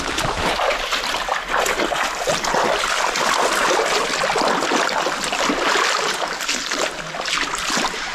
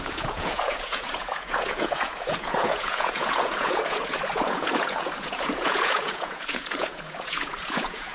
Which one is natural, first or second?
first